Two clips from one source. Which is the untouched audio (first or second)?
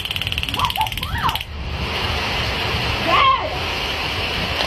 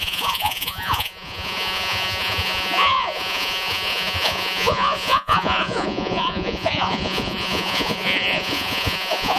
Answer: first